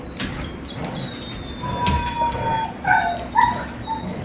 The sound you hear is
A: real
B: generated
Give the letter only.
A